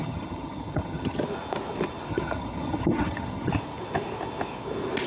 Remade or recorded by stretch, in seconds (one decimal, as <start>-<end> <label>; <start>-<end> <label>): 0.0-1.2 remade; 1.2-2.1 recorded; 2.1-3.5 remade; 3.5-5.1 recorded